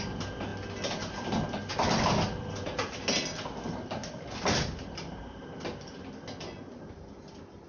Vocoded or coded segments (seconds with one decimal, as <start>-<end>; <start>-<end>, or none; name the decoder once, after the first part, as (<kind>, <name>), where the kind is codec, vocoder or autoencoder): none